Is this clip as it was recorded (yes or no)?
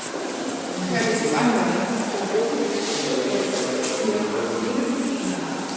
yes